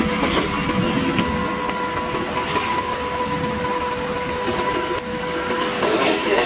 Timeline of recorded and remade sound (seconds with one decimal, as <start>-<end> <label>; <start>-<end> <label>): 0.0-2.5 recorded; 2.5-3.2 remade; 3.2-5.1 recorded; 5.1-6.5 remade